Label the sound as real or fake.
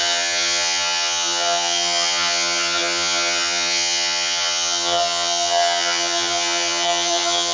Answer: fake